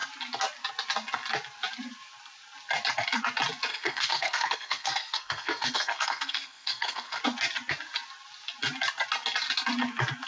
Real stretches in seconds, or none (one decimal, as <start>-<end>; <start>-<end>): 0.0-3.7; 7.2-10.3